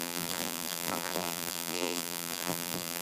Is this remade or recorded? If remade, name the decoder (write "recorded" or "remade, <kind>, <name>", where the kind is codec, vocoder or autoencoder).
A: remade, vocoder, BigVGAN v2